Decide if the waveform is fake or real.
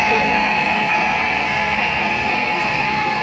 fake